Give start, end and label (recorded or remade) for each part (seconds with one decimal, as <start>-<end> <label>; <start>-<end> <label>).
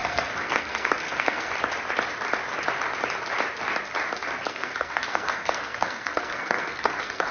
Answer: 0.0-1.5 remade; 1.5-4.5 recorded; 4.5-7.3 remade